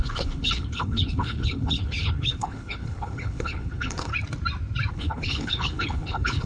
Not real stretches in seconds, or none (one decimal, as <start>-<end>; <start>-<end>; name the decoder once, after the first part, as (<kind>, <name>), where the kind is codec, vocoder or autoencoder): 0.0-4.1 (codec, HILCodec); 4.9-6.5